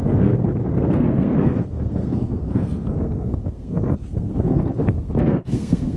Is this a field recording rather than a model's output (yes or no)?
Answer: no